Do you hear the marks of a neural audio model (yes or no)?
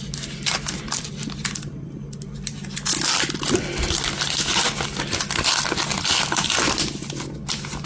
no